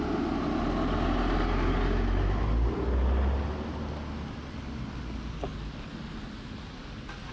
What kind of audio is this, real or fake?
real